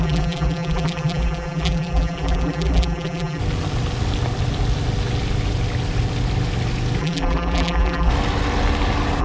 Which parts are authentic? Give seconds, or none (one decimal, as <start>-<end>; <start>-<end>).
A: 3.4-7.0; 8.1-9.2